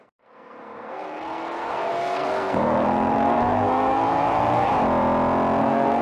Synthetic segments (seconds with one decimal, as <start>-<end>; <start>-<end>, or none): 0.0-4.7; 5.6-6.0